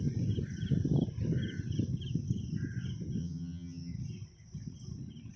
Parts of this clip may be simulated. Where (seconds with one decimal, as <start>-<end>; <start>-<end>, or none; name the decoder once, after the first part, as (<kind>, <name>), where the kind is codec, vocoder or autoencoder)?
3.2-3.9 (vocoder, HiFi-GAN)